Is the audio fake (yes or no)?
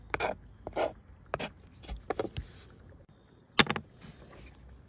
no